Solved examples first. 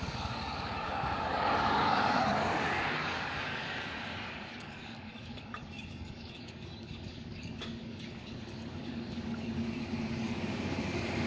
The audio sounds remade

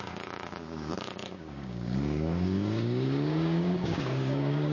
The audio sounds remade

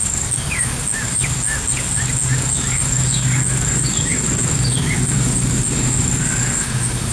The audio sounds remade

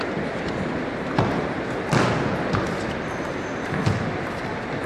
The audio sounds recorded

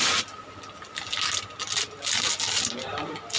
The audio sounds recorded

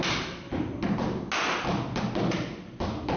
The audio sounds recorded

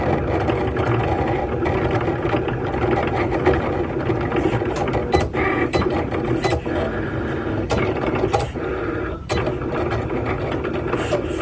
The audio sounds recorded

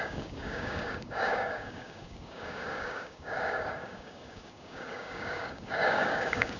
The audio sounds remade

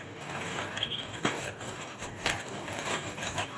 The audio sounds remade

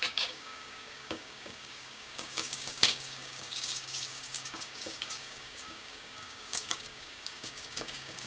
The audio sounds remade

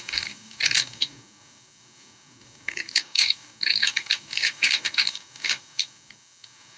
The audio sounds remade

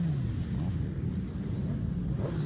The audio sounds recorded